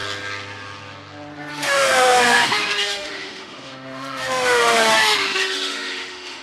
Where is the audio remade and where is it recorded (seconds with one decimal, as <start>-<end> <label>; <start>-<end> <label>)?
0.0-1.5 recorded; 1.5-6.4 remade

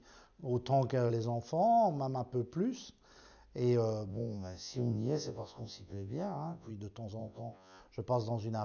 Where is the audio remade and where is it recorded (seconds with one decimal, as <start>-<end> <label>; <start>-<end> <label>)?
0.0-4.1 recorded; 4.1-6.7 remade; 6.7-7.2 recorded; 7.2-7.8 remade; 7.8-8.6 recorded

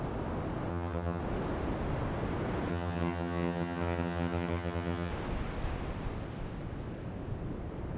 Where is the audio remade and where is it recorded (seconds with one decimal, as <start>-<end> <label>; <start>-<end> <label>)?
0.0-0.7 recorded; 0.7-1.2 remade; 1.2-2.7 recorded; 2.7-5.1 remade; 5.1-8.0 recorded

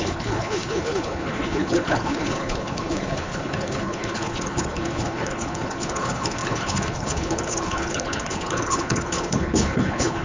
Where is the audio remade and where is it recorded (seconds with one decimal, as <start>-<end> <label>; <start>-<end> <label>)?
0.0-10.2 remade

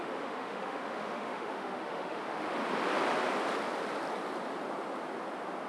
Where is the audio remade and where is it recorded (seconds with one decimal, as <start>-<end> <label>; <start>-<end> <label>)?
0.0-2.6 remade; 2.6-5.7 recorded

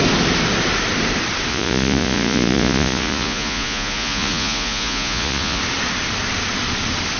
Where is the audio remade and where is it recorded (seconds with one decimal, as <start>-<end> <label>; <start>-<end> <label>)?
0.0-1.5 recorded; 1.5-5.6 remade; 5.6-7.2 recorded

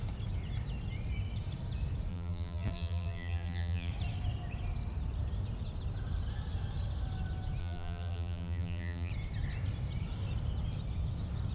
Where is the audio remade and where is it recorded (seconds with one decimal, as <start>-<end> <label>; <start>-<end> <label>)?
0.0-2.1 recorded; 2.1-3.9 remade; 3.9-7.6 recorded; 7.6-9.1 remade; 9.1-11.5 recorded

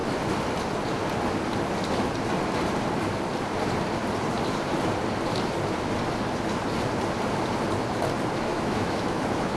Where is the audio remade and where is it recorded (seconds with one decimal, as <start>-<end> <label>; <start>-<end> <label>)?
0.0-8.5 recorded; 8.5-9.6 remade